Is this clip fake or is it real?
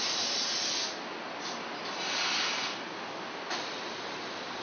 real